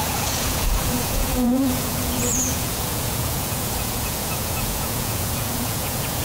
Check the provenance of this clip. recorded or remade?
remade